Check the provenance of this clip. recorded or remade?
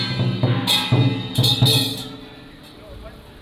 recorded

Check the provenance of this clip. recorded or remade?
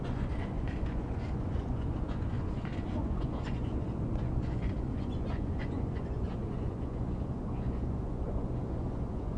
remade